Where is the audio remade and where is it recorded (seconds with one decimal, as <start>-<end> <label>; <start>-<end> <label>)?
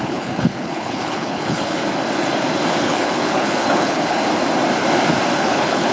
0.0-1.8 remade; 1.8-2.7 recorded; 2.7-4.2 remade; 4.2-5.4 recorded; 5.4-5.9 remade